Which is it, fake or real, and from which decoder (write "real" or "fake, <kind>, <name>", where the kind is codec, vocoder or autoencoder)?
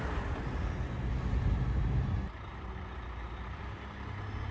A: real